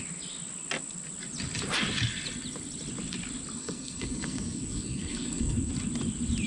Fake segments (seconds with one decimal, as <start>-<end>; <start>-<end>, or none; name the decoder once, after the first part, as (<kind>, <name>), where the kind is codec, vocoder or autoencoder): 3.6-5.7 (codec, SNAC)